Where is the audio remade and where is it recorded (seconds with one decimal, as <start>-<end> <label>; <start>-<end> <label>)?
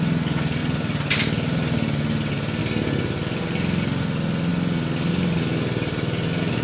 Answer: 0.0-6.6 recorded